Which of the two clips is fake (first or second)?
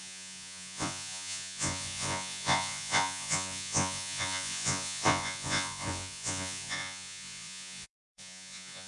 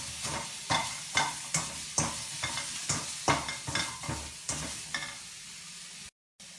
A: first